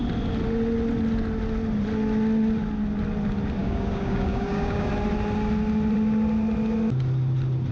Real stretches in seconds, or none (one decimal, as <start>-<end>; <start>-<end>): 0.0-3.6; 4.9-7.7